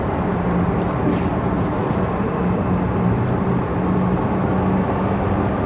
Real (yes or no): yes